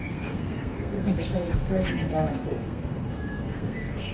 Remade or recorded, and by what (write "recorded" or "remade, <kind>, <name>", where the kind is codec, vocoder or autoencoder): remade, codec, SNAC